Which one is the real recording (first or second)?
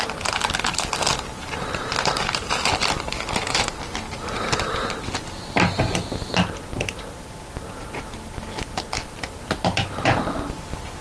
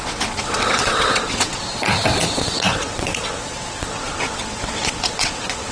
first